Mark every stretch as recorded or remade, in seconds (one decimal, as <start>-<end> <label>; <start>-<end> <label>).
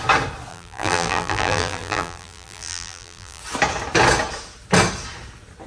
0.0-0.5 recorded; 0.5-3.4 remade; 3.4-5.7 recorded